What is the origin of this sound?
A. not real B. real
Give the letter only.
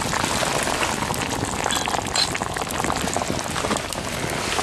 B